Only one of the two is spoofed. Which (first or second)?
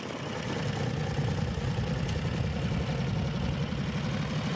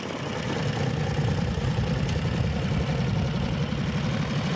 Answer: second